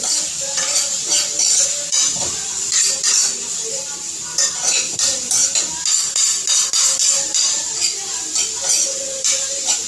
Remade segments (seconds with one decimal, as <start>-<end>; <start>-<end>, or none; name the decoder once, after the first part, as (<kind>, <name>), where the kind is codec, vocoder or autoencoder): 7.3-8.0 (vocoder, BigVGAN v2)